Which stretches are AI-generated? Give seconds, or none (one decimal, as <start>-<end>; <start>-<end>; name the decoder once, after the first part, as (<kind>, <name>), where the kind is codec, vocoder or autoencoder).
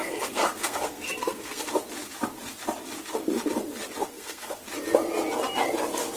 0.0-1.7 (codec, SNAC); 4.0-4.6